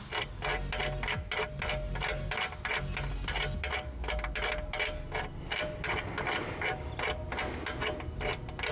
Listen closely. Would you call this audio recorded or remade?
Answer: recorded